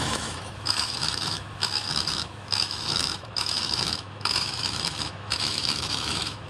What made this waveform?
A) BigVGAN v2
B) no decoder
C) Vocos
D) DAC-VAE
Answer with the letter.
D